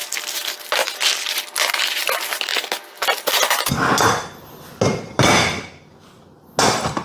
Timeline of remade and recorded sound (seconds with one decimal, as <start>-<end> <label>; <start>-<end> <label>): 0.0-7.0 recorded